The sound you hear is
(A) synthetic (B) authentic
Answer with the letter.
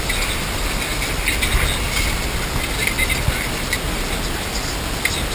B